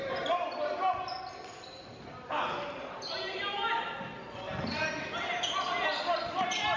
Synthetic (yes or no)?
no